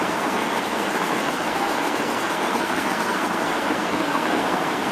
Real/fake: fake